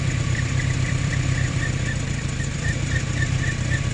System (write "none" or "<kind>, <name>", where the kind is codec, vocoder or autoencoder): vocoder, BigVGAN v2